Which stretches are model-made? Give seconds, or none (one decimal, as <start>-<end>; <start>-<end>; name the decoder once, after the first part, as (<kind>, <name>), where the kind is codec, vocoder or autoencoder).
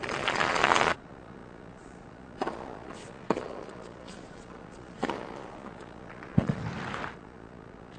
0.0-6.6 (vocoder, Vocos); 7.1-8.0